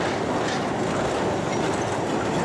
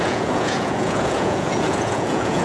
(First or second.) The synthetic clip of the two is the second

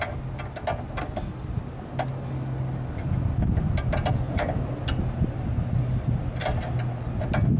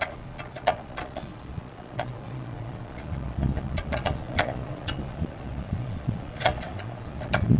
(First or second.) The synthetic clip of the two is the second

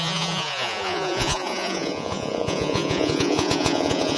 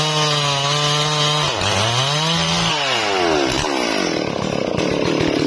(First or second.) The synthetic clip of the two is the first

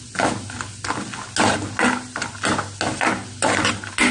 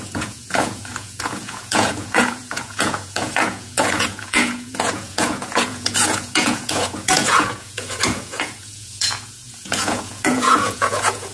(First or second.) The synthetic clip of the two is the second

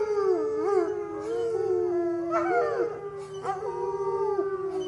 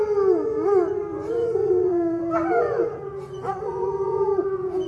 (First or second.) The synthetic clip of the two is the second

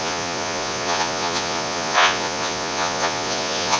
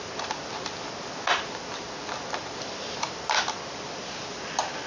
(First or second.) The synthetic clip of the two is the first